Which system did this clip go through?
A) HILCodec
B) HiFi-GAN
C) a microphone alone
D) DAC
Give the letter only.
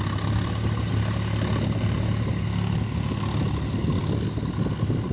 C